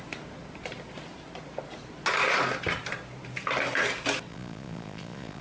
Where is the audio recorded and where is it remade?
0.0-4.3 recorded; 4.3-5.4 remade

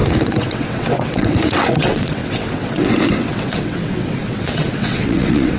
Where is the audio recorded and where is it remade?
0.0-5.6 remade

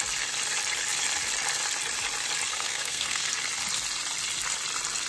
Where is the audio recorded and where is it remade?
0.0-2.5 recorded; 2.5-3.3 remade; 3.3-5.1 recorded

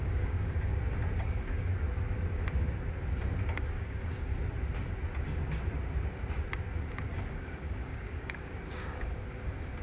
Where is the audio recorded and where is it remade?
0.0-0.7 remade; 0.7-1.2 recorded; 1.2-1.7 remade; 1.7-3.5 recorded; 3.5-4.4 remade; 4.4-7.3 recorded; 7.3-9.8 remade

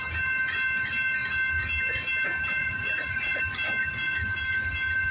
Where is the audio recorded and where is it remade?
0.0-2.6 recorded; 2.6-3.4 remade; 3.4-5.1 recorded